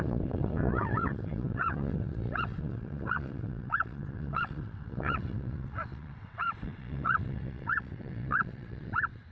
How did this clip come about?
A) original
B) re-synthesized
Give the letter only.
B